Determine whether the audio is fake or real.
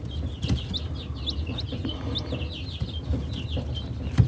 real